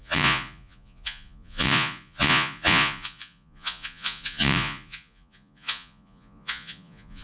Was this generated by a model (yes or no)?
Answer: yes